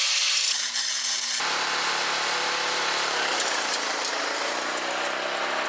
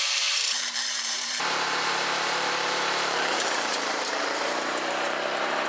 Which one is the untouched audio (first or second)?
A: first